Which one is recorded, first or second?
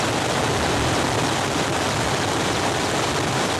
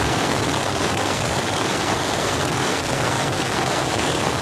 first